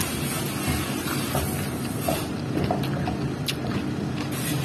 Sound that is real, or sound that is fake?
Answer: real